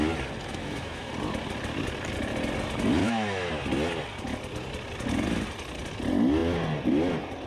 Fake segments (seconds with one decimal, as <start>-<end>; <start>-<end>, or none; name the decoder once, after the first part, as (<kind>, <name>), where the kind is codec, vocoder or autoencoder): 0.5-1.1 (autoencoder, DAC-VAE); 3.0-3.5

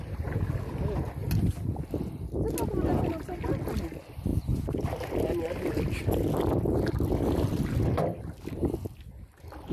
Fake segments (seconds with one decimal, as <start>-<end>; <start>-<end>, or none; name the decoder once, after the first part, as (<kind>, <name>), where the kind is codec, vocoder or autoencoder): none

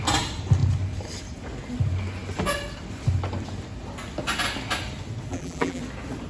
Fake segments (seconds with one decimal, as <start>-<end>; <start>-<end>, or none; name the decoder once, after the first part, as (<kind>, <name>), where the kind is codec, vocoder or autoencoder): 5.3-5.8 (vocoder, BigVGAN v2)

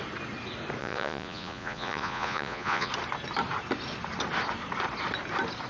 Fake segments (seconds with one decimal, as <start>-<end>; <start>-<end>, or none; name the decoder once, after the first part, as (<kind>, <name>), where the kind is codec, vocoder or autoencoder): 0.8-2.9 (vocoder, Vocos)

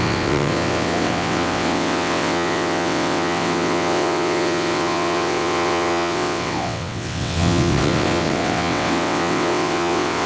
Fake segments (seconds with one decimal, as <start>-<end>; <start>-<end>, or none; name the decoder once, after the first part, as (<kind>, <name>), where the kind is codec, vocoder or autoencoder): 0.0-10.3 (vocoder, WaveNeXt)

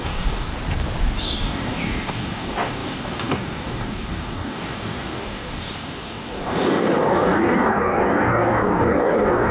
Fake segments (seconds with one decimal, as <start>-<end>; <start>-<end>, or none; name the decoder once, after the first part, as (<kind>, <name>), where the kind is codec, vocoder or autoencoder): 0.0-0.5 (codec, DAC); 1.2-9.5

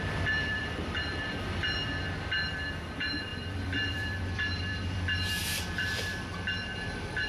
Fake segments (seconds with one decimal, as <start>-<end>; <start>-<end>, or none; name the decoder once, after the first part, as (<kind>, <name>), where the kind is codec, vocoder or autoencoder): 0.0-7.3 (vocoder, BigVGAN v2)

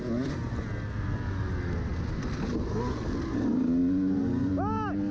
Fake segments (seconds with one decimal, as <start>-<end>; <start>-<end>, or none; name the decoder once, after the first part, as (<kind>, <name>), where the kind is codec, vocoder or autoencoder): none